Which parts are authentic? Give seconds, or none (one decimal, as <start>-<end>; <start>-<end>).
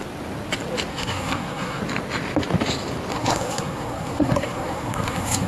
0.0-0.9; 1.8-3.1